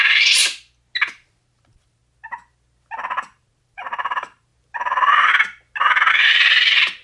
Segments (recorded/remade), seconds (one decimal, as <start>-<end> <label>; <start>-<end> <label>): 0.0-0.4 remade; 0.4-1.1 recorded; 1.1-2.0 remade; 2.0-3.2 recorded; 3.2-4.5 remade; 4.5-6.1 recorded; 6.1-7.0 remade